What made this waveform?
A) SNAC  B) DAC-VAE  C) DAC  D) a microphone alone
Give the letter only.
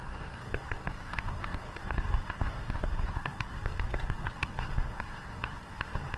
A